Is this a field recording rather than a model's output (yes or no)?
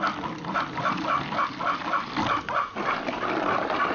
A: yes